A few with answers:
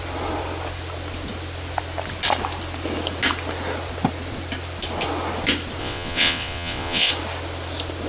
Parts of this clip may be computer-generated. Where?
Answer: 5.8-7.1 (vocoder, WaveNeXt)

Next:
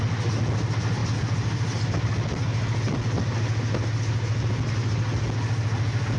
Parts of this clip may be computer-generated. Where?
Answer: none

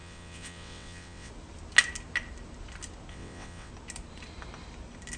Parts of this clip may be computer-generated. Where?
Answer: 0.0-1.3 (vocoder, WaveNeXt); 3.1-3.7

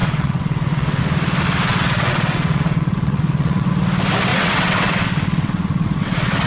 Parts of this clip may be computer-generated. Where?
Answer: 0.0-1.0 (vocoder, WaveNeXt); 1.7-3.7; 4.3-6.5

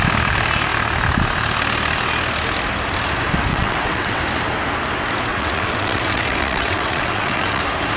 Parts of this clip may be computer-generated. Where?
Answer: 3.5-4.2 (vocoder, WaveNeXt); 5.3-7.6